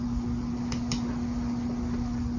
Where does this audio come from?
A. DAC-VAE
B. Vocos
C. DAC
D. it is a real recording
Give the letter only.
D